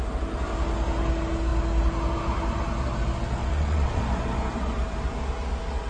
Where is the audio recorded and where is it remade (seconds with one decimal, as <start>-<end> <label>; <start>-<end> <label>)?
0.0-3.4 recorded; 3.4-4.0 remade; 4.0-5.9 recorded